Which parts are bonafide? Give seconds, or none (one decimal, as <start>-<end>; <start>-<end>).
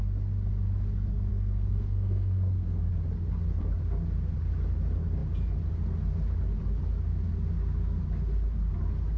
0.0-1.3; 2.9-9.2